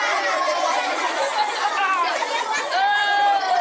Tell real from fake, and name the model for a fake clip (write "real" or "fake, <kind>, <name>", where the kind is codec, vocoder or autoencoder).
fake, vocoder, BigVGAN v2